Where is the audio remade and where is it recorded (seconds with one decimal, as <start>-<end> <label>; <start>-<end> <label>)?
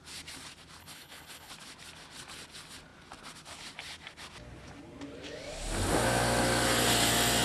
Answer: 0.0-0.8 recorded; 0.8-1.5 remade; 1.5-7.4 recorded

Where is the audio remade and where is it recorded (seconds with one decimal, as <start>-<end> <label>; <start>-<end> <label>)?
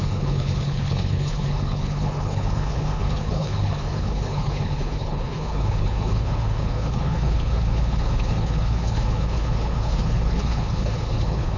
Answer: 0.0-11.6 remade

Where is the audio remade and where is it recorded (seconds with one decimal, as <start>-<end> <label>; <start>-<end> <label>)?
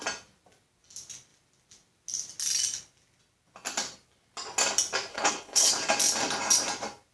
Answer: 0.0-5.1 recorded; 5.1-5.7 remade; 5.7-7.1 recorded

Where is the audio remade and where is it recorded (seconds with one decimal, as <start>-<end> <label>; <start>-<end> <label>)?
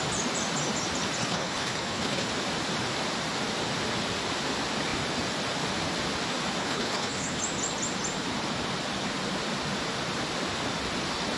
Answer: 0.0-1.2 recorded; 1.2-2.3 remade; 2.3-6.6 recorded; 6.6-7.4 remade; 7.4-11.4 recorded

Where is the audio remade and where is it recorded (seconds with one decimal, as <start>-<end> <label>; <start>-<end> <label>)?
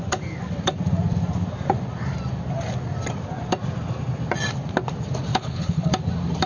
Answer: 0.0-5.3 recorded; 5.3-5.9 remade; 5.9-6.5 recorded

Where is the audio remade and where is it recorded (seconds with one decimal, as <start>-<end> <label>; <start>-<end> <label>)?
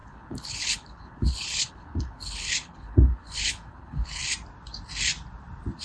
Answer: 0.0-4.2 remade; 4.2-5.8 recorded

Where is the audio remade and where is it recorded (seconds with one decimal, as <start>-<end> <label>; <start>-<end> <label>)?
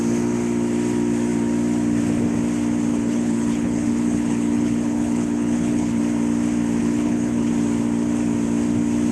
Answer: 0.0-2.9 recorded; 2.9-6.0 remade; 6.0-6.8 recorded; 6.8-7.5 remade; 7.5-9.1 recorded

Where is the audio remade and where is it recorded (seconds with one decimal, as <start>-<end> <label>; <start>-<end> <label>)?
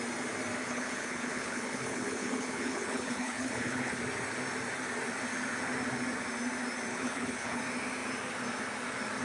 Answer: 0.0-0.6 recorded; 0.6-4.0 remade; 4.0-6.9 recorded; 6.9-7.6 remade; 7.6-9.2 recorded